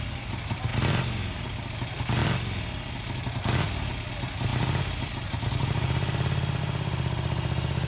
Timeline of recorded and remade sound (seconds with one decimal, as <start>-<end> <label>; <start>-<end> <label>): 0.0-0.7 remade; 0.7-1.4 recorded; 1.4-2.2 remade; 2.2-4.1 recorded; 4.1-7.9 remade

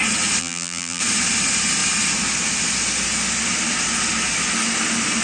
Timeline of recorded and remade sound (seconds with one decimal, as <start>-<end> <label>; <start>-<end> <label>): 0.0-0.4 recorded; 0.4-1.0 remade; 1.0-5.2 recorded

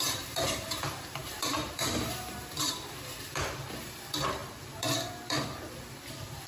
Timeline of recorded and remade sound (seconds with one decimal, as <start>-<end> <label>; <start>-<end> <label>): 0.0-6.5 remade

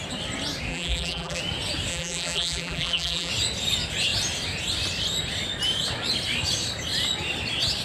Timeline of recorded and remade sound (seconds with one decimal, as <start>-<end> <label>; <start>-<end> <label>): 0.0-0.7 recorded; 0.7-1.4 remade; 1.4-1.9 recorded; 1.9-3.3 remade; 3.3-7.8 recorded